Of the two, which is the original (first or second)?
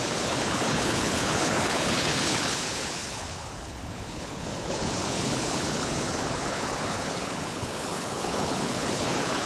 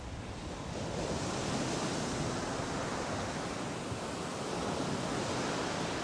second